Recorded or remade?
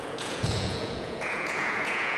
remade